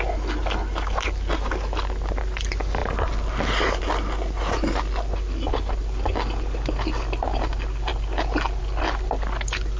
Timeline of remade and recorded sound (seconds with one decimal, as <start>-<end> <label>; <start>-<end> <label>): 0.0-9.8 recorded